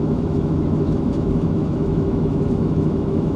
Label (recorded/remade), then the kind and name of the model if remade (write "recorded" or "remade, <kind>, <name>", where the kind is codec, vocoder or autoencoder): remade, autoencoder, DAC-VAE